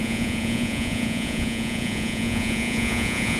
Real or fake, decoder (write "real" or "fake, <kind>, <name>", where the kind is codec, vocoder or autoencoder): fake, vocoder, Vocos